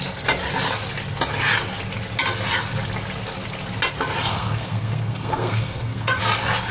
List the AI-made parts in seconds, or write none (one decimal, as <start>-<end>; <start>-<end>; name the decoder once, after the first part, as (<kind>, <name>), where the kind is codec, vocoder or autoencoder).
4.3-6.2 (codec, SNAC)